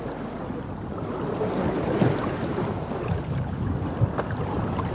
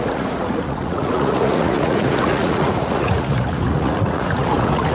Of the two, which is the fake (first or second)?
second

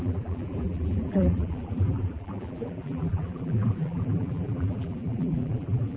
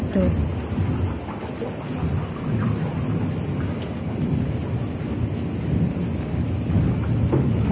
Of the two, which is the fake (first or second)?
first